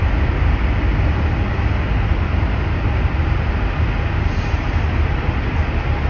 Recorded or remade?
recorded